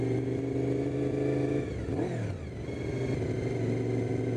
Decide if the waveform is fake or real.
real